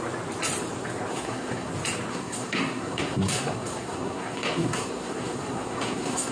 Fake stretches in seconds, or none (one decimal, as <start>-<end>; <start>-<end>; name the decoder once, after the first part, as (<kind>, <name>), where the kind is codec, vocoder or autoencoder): 1.1-1.7 (codec, SNAC); 2.1-6.3